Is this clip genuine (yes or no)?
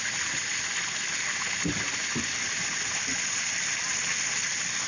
yes